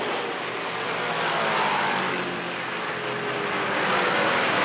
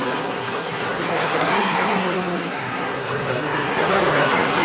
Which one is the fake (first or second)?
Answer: second